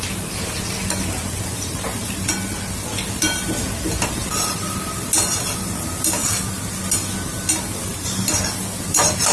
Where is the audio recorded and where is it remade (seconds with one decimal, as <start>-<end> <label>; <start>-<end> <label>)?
0.0-9.3 recorded